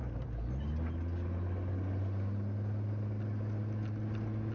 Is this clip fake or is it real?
real